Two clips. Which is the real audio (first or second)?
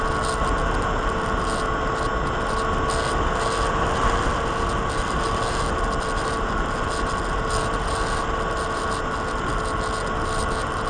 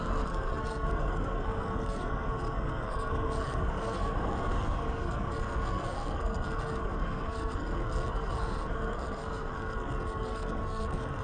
first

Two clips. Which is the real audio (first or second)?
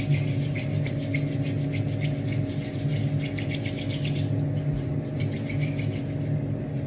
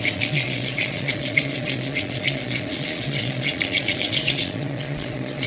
first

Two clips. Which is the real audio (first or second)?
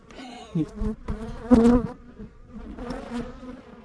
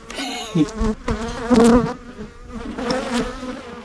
second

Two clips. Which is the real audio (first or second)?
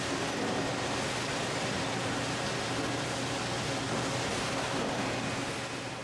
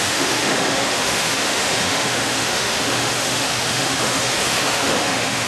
first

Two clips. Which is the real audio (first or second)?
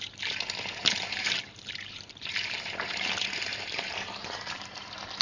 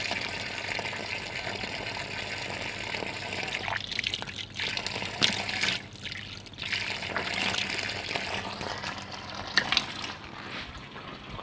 second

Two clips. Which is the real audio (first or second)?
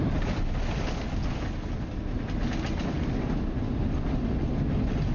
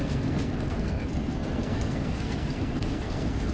first